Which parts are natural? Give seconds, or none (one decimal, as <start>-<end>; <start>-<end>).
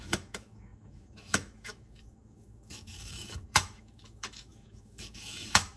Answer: none